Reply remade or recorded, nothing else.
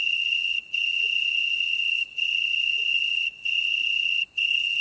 remade